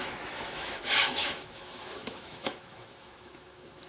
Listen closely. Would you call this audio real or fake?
fake